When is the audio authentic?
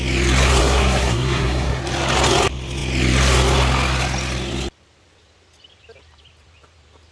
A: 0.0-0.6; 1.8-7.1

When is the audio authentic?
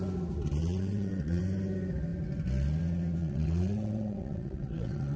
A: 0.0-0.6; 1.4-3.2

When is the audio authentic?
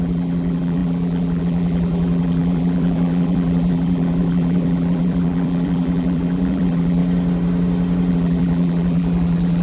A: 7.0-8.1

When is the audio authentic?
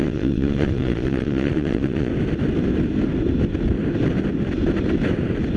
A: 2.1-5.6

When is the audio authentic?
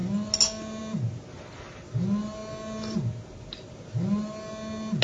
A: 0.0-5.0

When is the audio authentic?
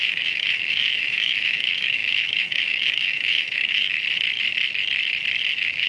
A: 3.9-5.5